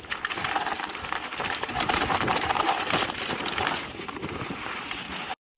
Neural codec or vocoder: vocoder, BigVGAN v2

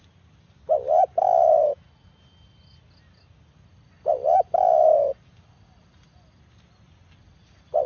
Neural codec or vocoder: none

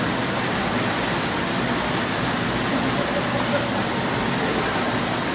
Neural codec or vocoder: none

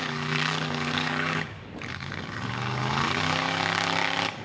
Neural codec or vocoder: codec, DAC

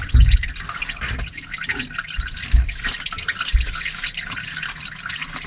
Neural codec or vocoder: none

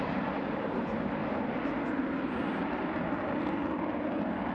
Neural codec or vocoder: none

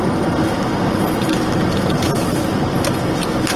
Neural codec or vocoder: none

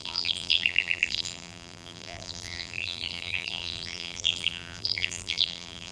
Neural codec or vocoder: vocoder, BigVGAN v2